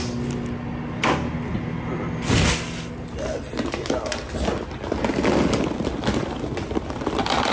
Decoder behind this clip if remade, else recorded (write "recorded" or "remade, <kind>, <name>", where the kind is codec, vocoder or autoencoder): recorded